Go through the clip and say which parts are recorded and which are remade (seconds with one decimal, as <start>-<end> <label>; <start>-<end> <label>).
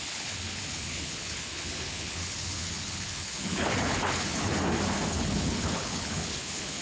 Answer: 0.0-4.5 remade; 4.5-5.1 recorded; 5.1-6.8 remade